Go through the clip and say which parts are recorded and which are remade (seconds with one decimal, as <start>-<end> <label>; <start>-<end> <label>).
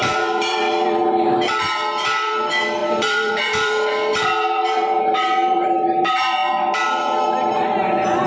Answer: 0.0-8.3 remade